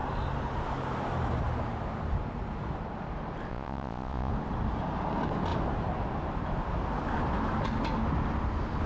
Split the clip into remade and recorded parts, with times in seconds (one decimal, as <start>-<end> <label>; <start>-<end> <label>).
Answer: 0.0-3.5 recorded; 3.5-4.3 remade; 4.3-8.9 recorded